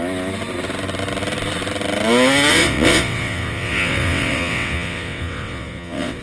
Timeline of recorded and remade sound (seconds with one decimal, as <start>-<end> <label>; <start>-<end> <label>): 0.0-2.5 recorded; 2.5-6.2 remade